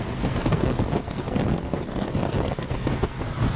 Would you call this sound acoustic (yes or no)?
no